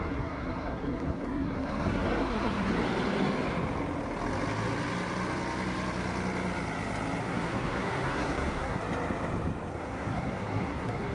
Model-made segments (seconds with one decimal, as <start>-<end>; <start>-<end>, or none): 0.0-2.7; 7.2-8.8; 9.7-11.1